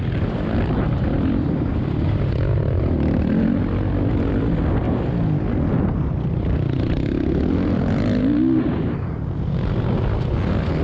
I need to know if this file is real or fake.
real